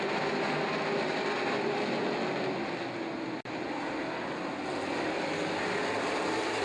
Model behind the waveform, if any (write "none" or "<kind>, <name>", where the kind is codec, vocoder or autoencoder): none